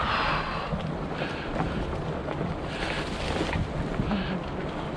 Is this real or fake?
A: real